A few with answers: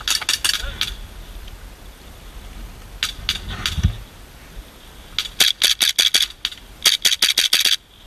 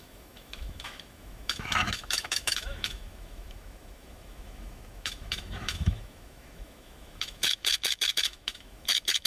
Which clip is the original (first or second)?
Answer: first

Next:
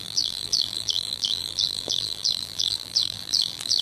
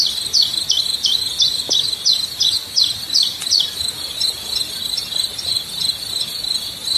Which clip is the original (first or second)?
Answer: second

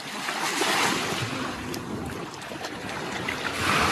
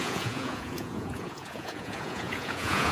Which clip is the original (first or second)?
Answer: first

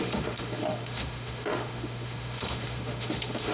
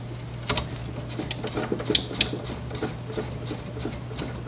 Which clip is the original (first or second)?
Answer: second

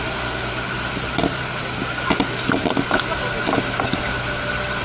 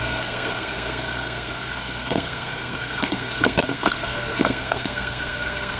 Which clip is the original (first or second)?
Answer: first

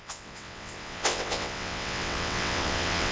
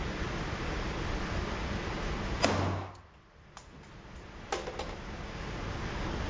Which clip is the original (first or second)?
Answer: second